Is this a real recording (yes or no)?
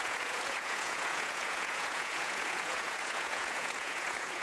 no